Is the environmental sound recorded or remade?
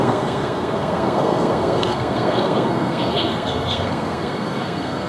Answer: remade